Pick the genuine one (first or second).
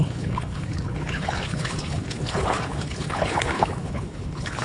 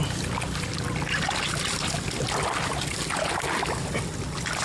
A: second